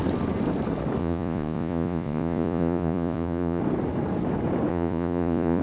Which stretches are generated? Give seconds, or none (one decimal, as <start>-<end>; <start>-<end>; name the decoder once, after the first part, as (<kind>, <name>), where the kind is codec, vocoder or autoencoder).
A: 1.0-3.6 (vocoder, Vocos); 4.7-5.6

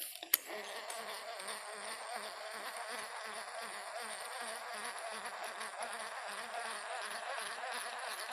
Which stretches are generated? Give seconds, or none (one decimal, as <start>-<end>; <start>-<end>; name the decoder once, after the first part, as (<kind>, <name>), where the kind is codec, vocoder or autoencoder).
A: none

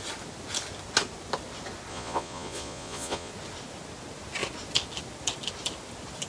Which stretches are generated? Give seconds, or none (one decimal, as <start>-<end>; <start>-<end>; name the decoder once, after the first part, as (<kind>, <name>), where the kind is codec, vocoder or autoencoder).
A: 1.9-3.3 (vocoder, Vocos)

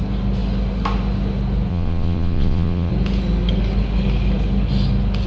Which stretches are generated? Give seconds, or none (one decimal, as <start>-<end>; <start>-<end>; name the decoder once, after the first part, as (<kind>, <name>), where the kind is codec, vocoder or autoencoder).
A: 1.7-2.9 (vocoder, Vocos)